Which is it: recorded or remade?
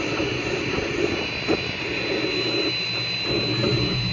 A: recorded